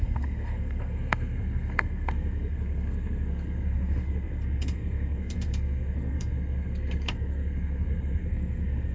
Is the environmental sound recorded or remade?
remade